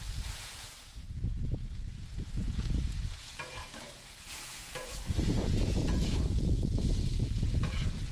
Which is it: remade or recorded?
remade